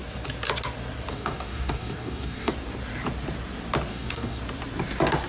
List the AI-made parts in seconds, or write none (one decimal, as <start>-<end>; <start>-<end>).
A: 1.1-2.5; 3.9-4.4